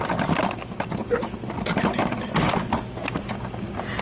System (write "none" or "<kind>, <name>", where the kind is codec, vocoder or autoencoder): none